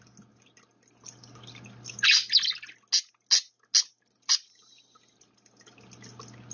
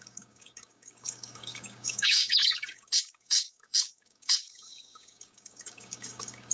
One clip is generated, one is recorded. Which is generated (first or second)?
second